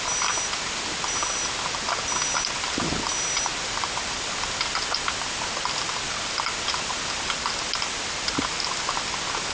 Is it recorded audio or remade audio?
recorded